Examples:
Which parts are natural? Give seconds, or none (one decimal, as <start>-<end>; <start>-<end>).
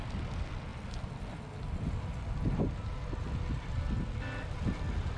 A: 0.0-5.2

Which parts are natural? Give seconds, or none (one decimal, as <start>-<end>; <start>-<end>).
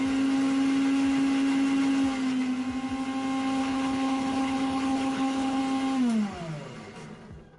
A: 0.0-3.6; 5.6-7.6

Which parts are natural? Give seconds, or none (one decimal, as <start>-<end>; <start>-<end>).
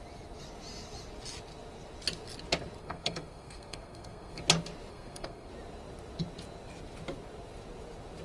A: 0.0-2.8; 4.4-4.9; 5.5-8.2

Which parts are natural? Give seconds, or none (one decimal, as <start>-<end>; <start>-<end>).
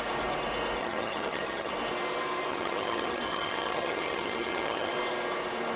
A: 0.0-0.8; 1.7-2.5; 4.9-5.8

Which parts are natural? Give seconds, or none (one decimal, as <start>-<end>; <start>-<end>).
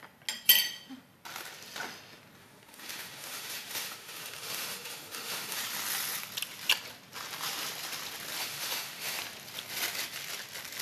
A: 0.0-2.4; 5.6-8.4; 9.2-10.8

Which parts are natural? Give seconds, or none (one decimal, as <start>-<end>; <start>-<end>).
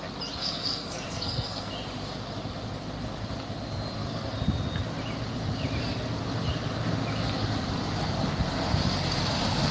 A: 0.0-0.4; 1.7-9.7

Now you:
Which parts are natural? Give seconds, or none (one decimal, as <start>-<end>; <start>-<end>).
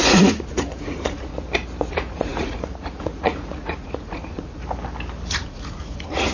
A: 1.3-1.9; 4.6-5.3